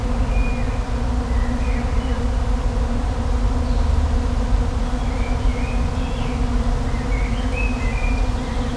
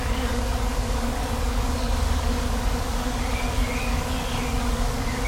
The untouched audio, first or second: first